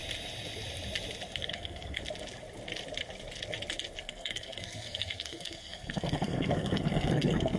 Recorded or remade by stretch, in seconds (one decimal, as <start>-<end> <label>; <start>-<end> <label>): 0.0-1.4 recorded; 1.4-2.0 remade; 2.0-4.0 recorded; 4.0-7.6 remade